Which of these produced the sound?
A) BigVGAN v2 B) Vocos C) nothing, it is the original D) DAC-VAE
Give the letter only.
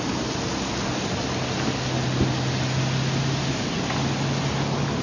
C